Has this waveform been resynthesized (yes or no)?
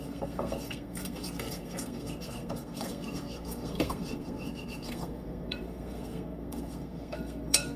yes